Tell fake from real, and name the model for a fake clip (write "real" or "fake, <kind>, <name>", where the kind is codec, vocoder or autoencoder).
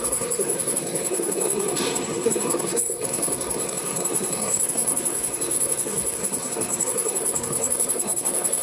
fake, codec, SNAC